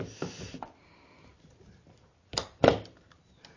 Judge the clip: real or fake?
real